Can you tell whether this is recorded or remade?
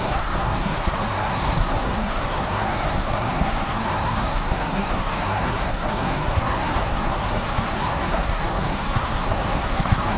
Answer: remade